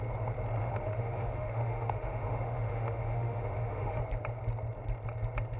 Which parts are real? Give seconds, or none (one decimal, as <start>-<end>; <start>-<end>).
0.0-0.6; 4.0-5.6